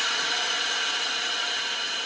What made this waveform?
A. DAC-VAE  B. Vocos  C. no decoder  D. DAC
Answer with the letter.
C